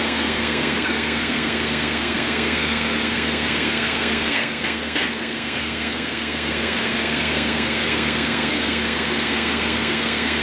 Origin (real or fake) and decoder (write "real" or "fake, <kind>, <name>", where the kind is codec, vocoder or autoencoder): fake, codec, SNAC